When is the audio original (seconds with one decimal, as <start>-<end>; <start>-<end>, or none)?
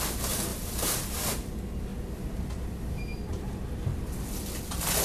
0.0-0.5; 1.5-5.0